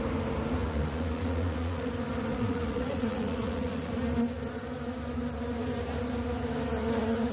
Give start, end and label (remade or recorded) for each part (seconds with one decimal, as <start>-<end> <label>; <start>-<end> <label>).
0.0-0.6 recorded; 0.6-1.9 remade; 1.9-2.3 recorded; 2.3-3.9 remade; 3.9-7.3 recorded